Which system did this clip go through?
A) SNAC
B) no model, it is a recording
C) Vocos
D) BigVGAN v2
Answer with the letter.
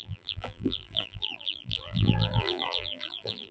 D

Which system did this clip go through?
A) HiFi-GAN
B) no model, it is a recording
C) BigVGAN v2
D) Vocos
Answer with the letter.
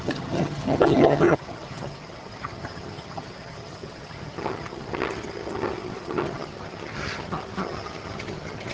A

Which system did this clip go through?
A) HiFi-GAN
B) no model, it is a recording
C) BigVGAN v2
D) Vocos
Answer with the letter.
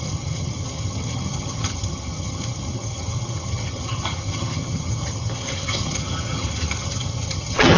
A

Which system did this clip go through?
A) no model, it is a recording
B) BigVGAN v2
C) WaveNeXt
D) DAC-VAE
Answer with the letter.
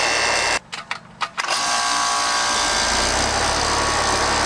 A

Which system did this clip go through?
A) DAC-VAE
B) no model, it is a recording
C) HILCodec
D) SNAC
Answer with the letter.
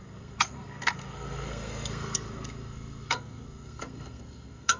D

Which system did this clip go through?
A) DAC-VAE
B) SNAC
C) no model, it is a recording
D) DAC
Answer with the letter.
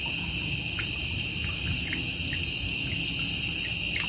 C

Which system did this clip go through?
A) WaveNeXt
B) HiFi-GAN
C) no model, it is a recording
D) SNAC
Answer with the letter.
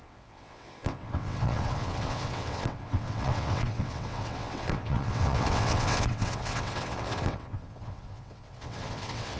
A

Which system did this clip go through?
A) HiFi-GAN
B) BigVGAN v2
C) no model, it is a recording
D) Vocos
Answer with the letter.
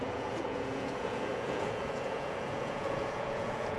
D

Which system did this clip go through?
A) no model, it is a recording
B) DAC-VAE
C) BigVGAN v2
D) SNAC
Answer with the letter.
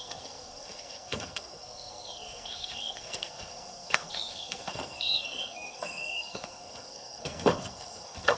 D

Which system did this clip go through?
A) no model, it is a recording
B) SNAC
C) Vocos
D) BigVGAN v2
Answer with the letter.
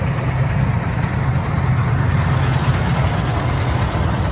A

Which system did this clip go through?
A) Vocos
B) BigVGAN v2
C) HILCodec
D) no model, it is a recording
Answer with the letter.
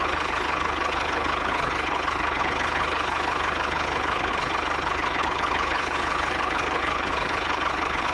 C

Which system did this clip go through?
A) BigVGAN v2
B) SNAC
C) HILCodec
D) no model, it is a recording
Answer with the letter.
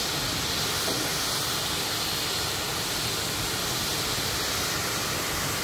D